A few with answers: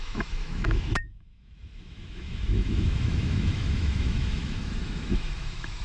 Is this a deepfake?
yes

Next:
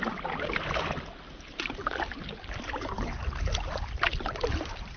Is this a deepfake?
no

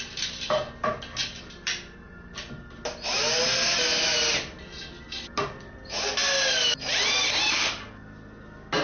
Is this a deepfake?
no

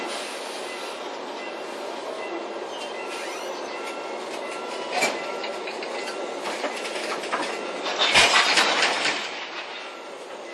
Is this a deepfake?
no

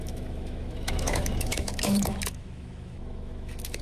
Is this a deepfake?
yes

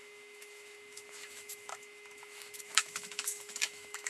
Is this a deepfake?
yes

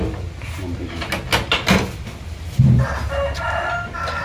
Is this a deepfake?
no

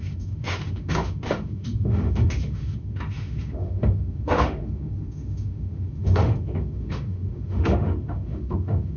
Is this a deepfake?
yes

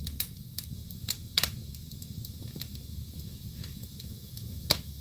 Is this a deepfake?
yes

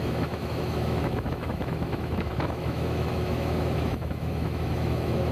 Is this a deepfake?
yes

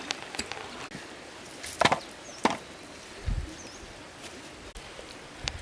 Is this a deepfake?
no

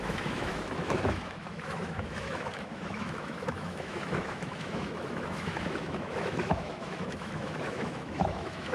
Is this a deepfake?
yes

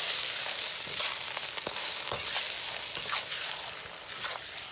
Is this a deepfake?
no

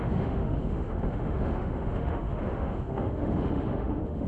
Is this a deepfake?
yes